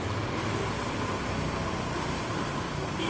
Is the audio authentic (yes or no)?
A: yes